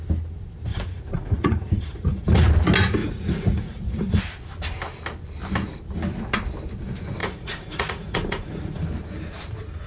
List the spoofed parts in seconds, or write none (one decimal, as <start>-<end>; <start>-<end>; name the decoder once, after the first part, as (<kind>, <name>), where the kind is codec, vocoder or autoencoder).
0.7-2.5 (vocoder, Vocos); 3.0-4.2; 7.2-8.8